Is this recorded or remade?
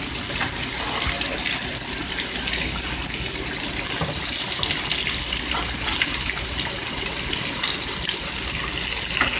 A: recorded